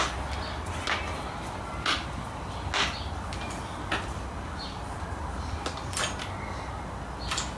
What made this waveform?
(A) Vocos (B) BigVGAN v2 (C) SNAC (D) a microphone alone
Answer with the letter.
D